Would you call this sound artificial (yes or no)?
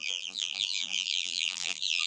yes